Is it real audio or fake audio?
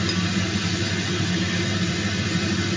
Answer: real